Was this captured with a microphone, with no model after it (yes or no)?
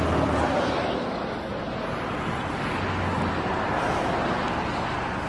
yes